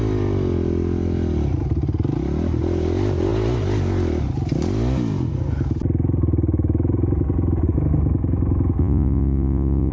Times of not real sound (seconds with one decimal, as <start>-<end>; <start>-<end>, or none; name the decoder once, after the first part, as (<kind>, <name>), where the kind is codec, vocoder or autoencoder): 8.8-9.9 (vocoder, Vocos)